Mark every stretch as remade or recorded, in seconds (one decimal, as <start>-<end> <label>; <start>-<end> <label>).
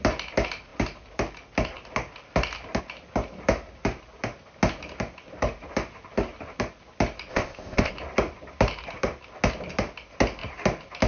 0.0-7.3 recorded; 7.3-7.9 remade; 7.9-11.1 recorded